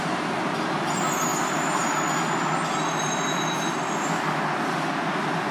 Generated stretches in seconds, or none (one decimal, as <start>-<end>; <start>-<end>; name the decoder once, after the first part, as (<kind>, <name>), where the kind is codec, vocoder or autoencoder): none